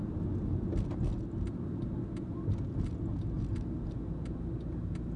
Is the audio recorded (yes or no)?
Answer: yes